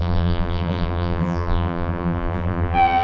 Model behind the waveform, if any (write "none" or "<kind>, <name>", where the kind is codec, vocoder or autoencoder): vocoder, BigVGAN v2